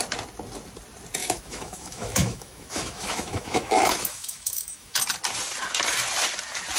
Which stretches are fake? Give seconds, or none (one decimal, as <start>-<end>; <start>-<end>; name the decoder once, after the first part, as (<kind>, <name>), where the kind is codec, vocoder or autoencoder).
1.2-5.0 (autoencoder, DAC-VAE)